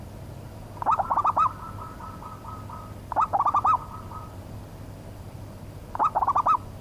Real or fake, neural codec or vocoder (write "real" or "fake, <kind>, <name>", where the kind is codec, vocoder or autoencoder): fake, vocoder, BigVGAN v2